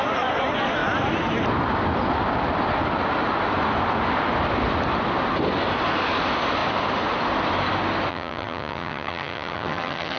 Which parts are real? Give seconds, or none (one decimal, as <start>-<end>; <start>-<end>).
0.0-8.1